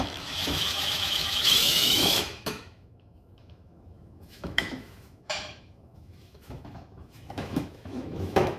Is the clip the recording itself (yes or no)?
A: no